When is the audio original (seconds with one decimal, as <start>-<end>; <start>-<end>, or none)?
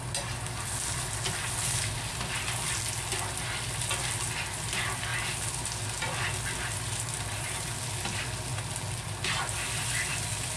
0.0-10.6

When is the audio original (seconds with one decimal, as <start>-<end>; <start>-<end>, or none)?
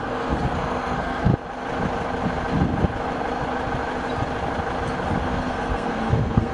1.3-5.2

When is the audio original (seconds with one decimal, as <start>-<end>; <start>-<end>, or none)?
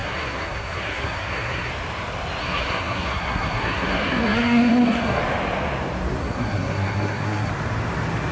1.7-2.4; 5.2-6.2; 7.5-8.3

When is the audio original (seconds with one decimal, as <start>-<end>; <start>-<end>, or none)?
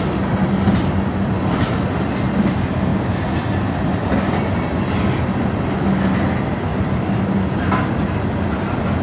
0.0-9.0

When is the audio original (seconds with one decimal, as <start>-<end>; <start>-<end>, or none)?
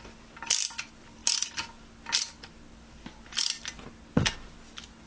0.0-5.1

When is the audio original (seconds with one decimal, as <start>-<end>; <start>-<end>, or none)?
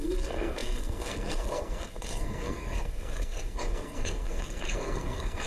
none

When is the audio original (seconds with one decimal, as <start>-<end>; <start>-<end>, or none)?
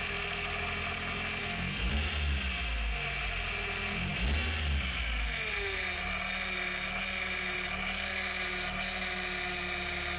0.0-1.4; 1.9-10.2